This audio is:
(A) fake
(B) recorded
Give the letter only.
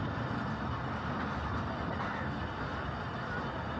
B